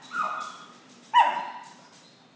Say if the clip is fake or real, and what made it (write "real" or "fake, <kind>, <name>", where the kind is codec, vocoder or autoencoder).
real